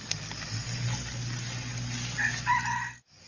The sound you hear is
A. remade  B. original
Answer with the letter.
B